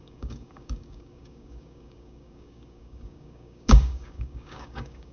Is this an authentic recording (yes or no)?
no